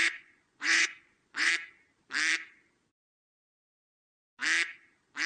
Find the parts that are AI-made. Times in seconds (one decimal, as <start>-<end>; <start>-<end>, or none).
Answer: 0.0-1.5